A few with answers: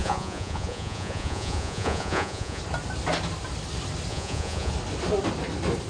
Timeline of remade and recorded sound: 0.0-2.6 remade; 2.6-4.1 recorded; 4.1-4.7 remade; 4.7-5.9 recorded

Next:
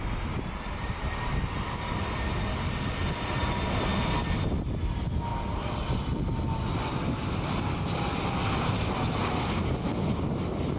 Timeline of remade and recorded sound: 0.0-10.8 recorded

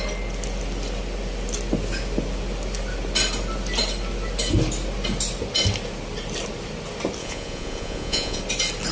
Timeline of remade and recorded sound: 0.0-7.2 recorded; 7.2-8.4 remade; 8.4-8.9 recorded

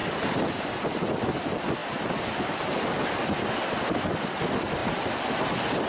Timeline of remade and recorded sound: 0.0-5.9 recorded